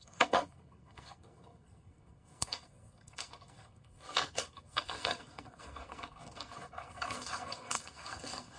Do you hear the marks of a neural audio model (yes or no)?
yes